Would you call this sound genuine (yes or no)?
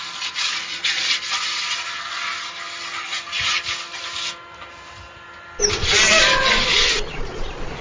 yes